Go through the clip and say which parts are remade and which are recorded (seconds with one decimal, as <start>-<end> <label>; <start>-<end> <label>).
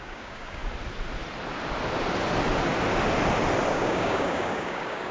0.0-0.6 remade; 0.6-3.7 recorded; 3.7-5.1 remade